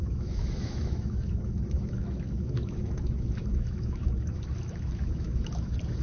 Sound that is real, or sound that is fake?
fake